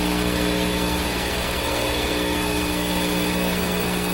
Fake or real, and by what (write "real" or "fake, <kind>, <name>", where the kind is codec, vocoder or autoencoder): fake, codec, SNAC